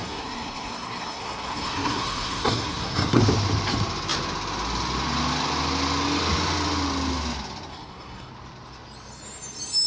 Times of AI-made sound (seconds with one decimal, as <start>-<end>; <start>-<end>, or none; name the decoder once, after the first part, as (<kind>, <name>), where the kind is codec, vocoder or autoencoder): 0.0-3.2 (codec, SNAC); 7.7-8.3